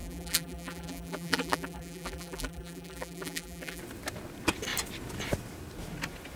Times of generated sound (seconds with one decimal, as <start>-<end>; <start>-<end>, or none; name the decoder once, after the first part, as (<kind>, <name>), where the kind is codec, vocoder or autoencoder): 0.0-3.8 (vocoder, BigVGAN v2)